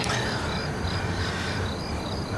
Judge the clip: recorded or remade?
remade